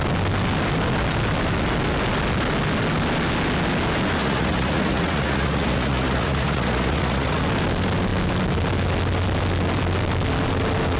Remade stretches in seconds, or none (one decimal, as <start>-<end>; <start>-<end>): 4.2-7.4